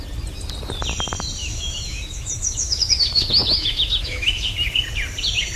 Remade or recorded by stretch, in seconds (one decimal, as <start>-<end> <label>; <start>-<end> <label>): 0.0-1.4 recorded; 1.4-4.8 remade; 4.8-5.6 recorded